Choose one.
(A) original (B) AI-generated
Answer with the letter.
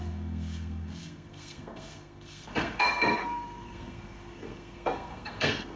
B